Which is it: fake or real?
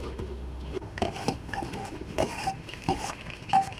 fake